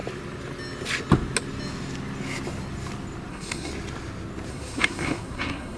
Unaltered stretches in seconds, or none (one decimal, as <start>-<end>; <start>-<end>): 0.0-3.3; 3.7-4.5